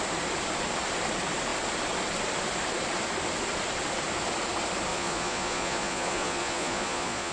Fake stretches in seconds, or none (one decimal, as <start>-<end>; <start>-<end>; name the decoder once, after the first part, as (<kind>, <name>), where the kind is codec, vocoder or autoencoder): 4.9-7.3 (vocoder, Vocos)